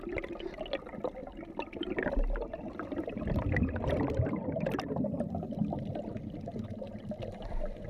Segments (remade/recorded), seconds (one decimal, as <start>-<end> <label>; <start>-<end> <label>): 0.0-1.2 recorded; 1.2-3.5 remade; 3.5-4.4 recorded; 4.4-5.3 remade; 5.3-7.9 recorded